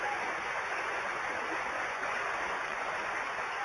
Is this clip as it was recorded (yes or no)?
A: no